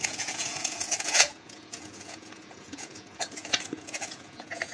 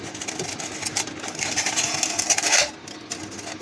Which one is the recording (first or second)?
second